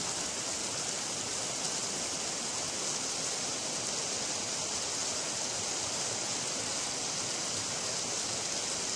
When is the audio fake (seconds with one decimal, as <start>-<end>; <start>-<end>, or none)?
none